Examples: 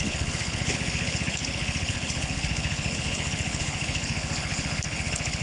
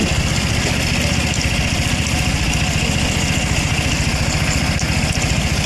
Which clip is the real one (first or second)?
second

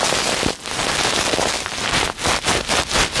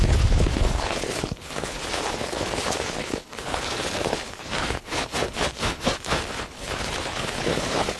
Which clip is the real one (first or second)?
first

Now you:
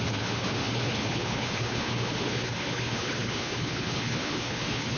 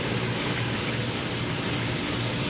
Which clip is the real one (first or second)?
second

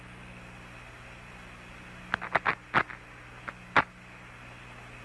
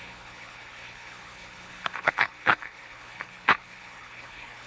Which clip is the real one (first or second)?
first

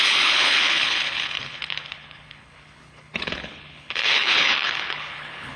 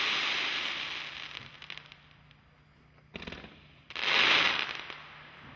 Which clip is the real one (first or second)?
second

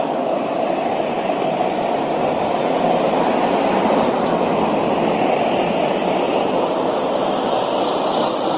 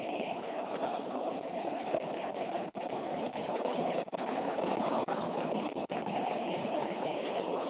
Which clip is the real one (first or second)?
first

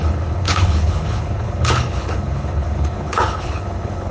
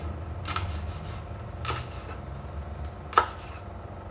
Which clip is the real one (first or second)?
second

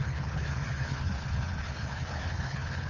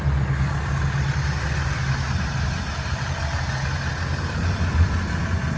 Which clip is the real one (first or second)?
second